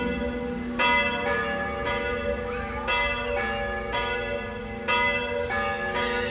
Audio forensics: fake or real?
real